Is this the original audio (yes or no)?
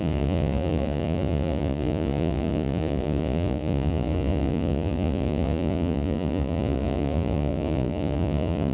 no